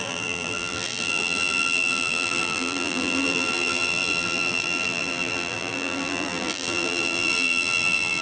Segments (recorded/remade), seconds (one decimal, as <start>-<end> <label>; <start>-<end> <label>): 0.0-8.2 remade